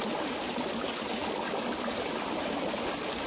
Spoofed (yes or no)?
no